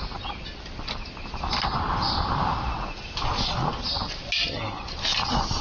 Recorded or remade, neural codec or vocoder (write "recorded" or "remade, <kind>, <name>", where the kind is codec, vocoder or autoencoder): recorded